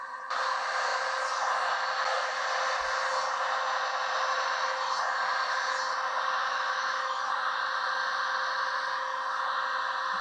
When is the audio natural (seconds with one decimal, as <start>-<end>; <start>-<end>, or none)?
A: 0.0-6.4; 7.3-10.2